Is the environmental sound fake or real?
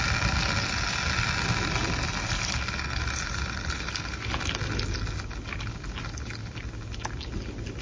real